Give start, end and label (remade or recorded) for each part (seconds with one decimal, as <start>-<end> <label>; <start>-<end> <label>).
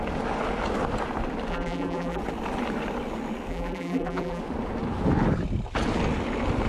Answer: 0.0-1.5 recorded; 1.5-2.2 remade; 2.2-3.5 recorded; 3.5-4.4 remade; 4.4-6.7 recorded